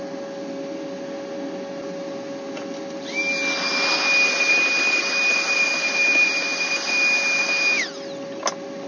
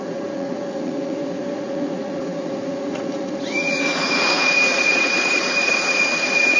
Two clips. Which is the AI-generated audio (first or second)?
second